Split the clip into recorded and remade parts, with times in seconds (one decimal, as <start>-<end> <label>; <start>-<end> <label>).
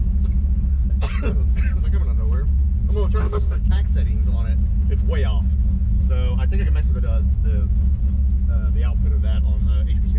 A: 0.0-3.2 recorded; 3.2-3.7 remade; 3.7-10.2 recorded